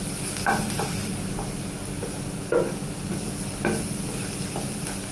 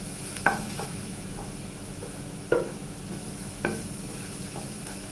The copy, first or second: second